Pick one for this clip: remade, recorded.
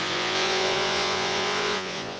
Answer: remade